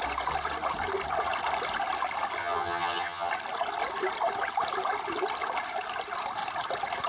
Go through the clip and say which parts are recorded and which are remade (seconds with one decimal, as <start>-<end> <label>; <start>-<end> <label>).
0.0-2.4 recorded; 2.4-3.3 remade; 3.3-7.1 recorded